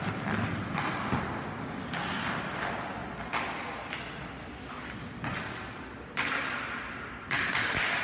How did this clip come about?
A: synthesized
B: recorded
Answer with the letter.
B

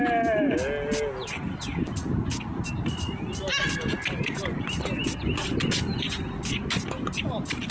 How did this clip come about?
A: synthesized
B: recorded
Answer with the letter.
B